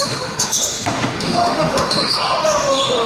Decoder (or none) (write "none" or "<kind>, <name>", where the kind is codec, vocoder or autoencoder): autoencoder, DAC-VAE